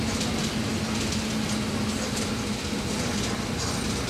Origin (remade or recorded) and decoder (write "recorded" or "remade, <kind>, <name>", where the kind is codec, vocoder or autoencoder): recorded